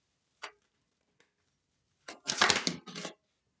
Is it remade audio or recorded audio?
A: recorded